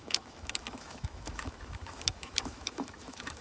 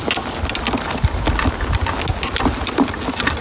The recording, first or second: second